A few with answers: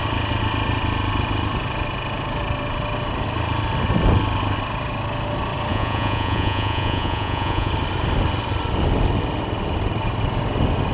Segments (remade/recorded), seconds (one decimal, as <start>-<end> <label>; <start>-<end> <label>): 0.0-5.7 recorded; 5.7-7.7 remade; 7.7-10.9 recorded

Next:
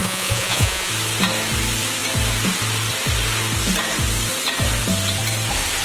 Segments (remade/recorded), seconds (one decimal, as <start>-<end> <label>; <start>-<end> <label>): 0.0-0.9 remade; 0.9-5.8 recorded

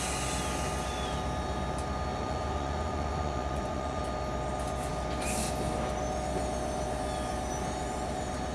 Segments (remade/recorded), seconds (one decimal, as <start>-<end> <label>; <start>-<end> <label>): 0.0-2.1 recorded; 2.1-4.0 remade; 4.0-8.5 recorded